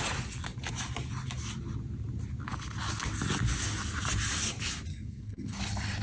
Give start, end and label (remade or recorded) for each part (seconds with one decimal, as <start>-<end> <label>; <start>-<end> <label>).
0.0-4.9 recorded; 4.9-5.6 remade; 5.6-6.0 recorded